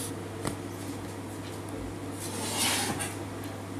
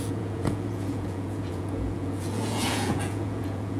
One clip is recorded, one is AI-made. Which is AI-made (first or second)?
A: second